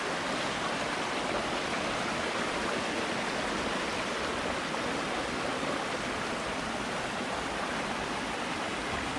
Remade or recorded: recorded